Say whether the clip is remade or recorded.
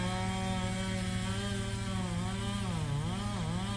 recorded